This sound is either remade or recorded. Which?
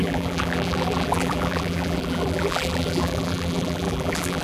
remade